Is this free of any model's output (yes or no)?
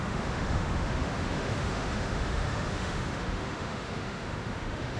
no